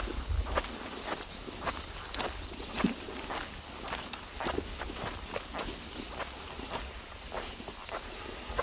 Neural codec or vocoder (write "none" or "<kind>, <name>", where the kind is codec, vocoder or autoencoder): none